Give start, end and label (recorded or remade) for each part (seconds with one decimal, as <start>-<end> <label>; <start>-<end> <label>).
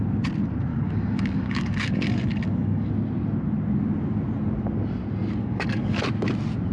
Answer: 0.0-0.7 recorded; 0.7-2.9 remade; 2.9-5.4 recorded; 5.4-6.0 remade; 6.0-6.7 recorded